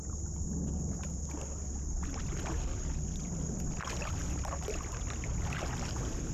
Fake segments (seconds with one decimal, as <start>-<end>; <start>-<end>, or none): none